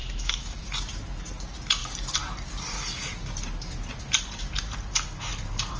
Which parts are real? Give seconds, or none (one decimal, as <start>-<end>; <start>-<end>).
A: 0.6-5.8

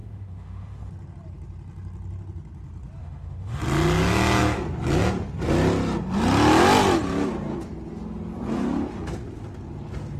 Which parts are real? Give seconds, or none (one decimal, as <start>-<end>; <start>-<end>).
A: 0.9-3.0; 3.6-10.2

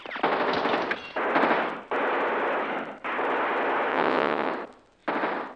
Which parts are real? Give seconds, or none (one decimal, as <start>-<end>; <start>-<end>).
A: 0.0-3.9; 4.5-5.6

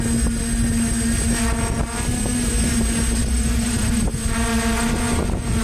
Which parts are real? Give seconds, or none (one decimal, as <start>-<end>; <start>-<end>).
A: 0.0-3.2; 4.1-4.5; 5.0-5.6

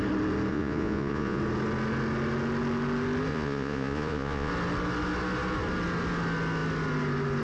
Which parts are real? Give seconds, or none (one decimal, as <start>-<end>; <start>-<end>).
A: 0.0-0.5; 1.4-3.3; 4.5-7.4

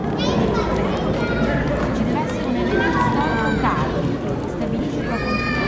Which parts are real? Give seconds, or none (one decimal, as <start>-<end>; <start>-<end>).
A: 0.0-5.7

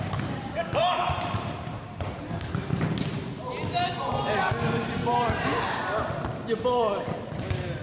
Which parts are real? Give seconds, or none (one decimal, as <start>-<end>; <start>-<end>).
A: 0.0-0.8; 3.1-5.0; 5.6-7.8

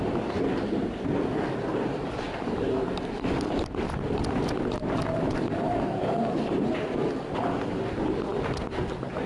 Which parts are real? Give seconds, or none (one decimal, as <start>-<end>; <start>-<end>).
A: 0.0-5.1; 6.7-9.3